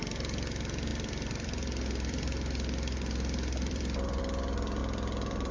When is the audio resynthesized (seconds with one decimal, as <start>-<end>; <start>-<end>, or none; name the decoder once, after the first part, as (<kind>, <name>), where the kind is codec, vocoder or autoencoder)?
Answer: 0.9-4.2 (vocoder, BigVGAN v2)